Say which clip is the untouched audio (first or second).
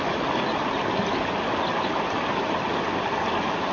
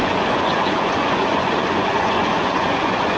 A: first